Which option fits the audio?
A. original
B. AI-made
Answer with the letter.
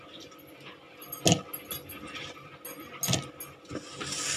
A